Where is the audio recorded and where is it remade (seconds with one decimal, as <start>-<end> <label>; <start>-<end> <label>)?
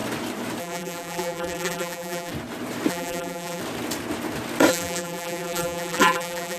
0.0-0.6 recorded; 0.6-2.3 remade; 2.3-2.9 recorded; 2.9-3.6 remade; 3.6-4.7 recorded; 4.7-6.6 remade